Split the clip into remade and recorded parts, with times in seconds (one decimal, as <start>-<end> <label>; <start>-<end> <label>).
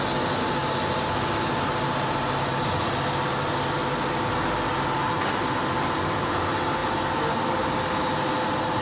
0.0-8.8 recorded